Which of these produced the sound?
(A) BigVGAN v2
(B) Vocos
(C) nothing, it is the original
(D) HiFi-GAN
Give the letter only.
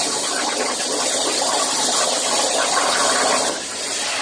C